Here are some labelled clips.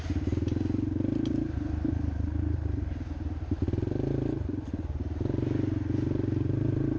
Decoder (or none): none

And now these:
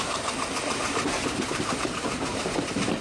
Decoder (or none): vocoder, BigVGAN v2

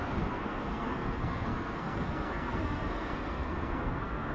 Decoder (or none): codec, SNAC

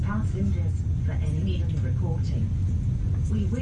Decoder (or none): none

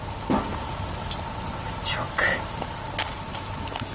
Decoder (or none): none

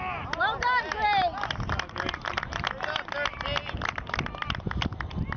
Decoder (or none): none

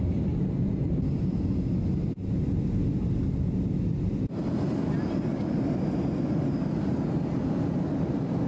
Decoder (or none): none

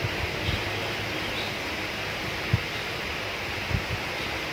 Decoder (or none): none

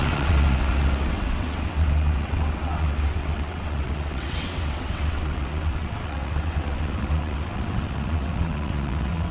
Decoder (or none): vocoder, WaveNeXt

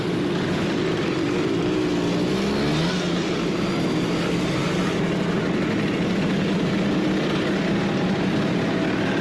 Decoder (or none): none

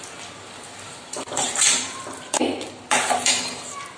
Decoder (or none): vocoder, BigVGAN v2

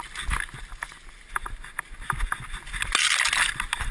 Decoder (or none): none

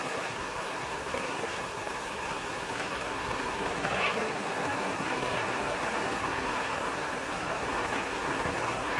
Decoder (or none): codec, SNAC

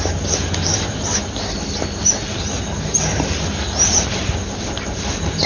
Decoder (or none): none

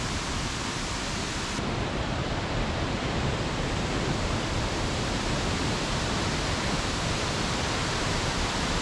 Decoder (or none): vocoder, BigVGAN v2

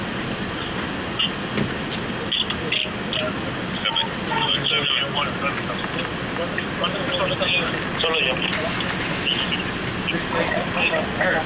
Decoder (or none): none